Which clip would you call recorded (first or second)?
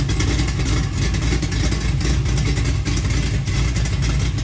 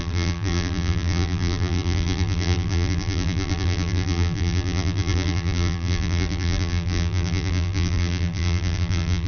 first